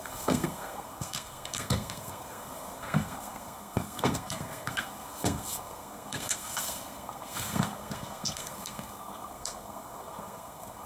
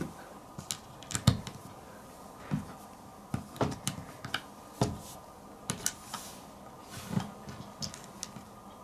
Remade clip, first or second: first